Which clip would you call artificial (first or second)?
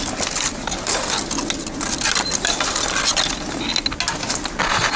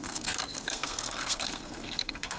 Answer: second